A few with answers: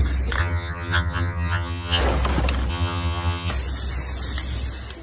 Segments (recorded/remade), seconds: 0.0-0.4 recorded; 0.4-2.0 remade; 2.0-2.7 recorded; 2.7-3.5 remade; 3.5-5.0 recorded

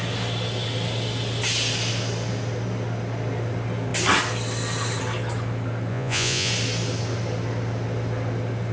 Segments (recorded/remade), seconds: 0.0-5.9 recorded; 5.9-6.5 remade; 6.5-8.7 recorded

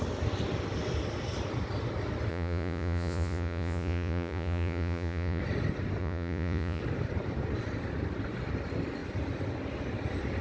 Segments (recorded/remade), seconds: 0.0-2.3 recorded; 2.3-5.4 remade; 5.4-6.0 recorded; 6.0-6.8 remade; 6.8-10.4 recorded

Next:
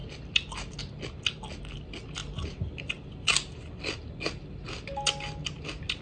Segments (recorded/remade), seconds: 0.0-6.0 recorded